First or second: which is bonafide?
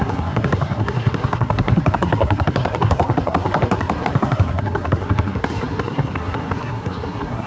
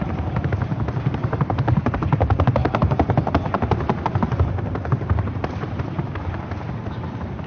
second